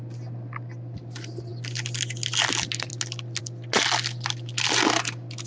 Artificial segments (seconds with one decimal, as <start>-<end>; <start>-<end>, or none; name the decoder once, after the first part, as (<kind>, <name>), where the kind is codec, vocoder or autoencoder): none